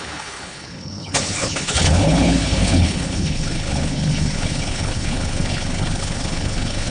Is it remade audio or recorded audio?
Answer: remade